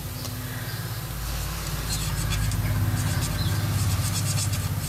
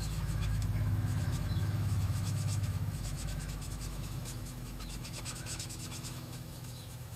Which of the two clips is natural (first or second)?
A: first